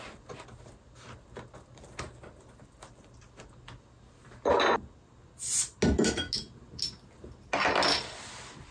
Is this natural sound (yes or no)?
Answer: yes